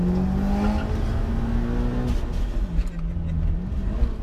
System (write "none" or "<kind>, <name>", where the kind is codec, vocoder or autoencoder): none